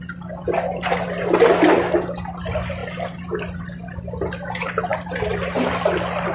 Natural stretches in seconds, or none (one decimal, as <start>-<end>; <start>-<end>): 0.0-6.3